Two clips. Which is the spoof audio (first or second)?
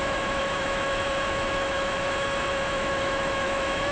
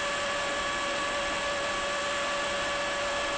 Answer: first